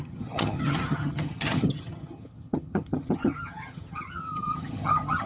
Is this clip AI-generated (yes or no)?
yes